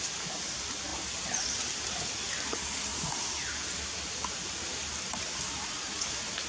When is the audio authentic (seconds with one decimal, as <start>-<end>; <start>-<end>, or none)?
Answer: 0.0-2.9; 5.7-6.5